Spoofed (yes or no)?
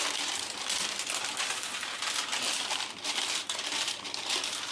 yes